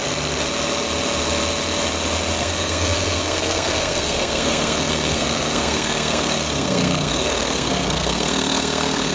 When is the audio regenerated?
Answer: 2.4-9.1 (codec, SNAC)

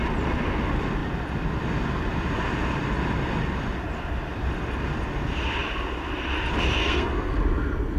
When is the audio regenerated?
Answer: 6.8-7.3 (codec, SNAC)

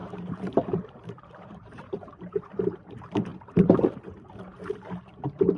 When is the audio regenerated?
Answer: 0.0-4.5 (vocoder, BigVGAN v2); 5.1-5.6

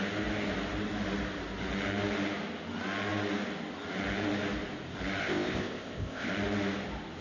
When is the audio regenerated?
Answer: 5.2-6.3 (codec, ZipCodec)

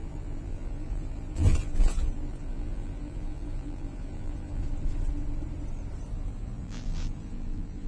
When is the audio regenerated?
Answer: 0.0-4.6 (vocoder, BigVGAN v2); 6.1-7.9

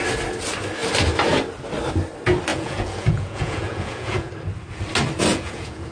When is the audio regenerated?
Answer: 2.5-4.3 (vocoder, Vocos); 5.3-5.9

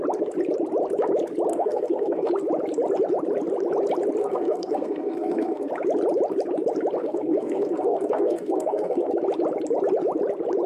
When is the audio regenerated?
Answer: 1.5-2.3 (codec, SNAC); 4.2-5.7; 7.0-9.1

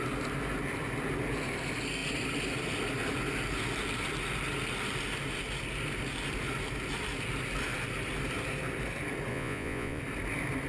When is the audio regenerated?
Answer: 9.3-10.0 (vocoder, Vocos)